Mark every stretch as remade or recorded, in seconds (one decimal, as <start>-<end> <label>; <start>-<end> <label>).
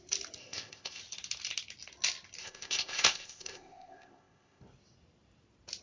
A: 0.0-0.4 recorded; 0.4-1.0 remade; 1.0-2.4 recorded; 2.4-4.6 remade; 4.6-5.8 recorded